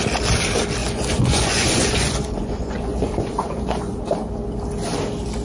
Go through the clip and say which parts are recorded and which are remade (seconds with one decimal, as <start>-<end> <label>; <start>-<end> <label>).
0.0-0.8 recorded; 0.8-4.0 remade; 4.0-5.4 recorded

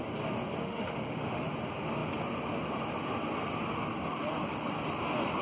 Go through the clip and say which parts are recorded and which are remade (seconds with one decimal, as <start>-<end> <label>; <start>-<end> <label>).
0.0-0.6 recorded; 0.6-1.4 remade; 1.4-5.4 recorded

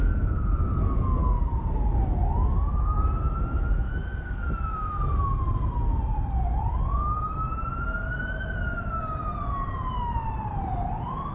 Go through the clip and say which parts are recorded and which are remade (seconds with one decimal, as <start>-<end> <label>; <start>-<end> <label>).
0.0-11.3 recorded

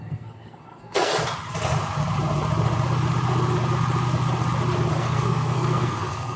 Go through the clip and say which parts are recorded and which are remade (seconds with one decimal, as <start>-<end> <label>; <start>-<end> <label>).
0.0-1.1 remade; 1.1-4.9 recorded; 4.9-6.4 remade

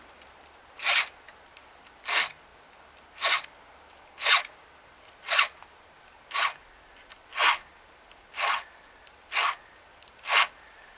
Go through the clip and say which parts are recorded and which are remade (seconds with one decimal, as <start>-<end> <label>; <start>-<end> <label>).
0.0-11.0 recorded

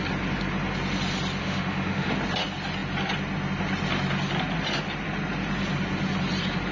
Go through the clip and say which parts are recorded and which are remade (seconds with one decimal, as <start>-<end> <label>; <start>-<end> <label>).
0.0-1.4 recorded; 1.4-2.1 remade; 2.1-6.7 recorded